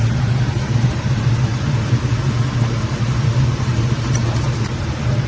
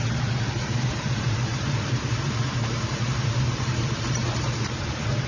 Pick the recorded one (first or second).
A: first